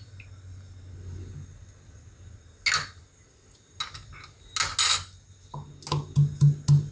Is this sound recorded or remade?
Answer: recorded